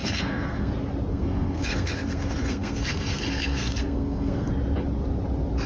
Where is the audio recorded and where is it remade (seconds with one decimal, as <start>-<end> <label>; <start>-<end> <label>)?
0.0-0.7 remade; 0.7-1.1 recorded; 1.1-4.5 remade; 4.5-5.7 recorded